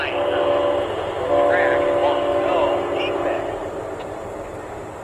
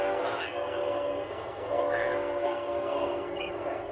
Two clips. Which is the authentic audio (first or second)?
first